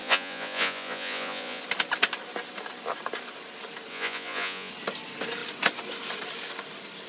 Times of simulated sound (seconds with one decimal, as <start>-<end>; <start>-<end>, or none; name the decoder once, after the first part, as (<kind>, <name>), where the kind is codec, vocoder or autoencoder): 0.0-1.6 (vocoder, Vocos); 3.9-4.7